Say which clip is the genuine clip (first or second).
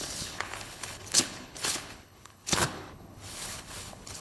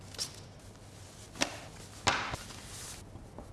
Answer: second